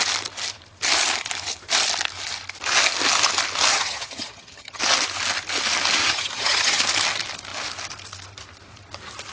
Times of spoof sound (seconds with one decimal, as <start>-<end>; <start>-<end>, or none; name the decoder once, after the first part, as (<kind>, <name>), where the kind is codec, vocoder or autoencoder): 3.7-4.8 (vocoder, HiFi-GAN); 6.0-6.8